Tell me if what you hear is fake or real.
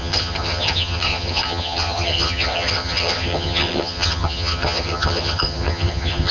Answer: fake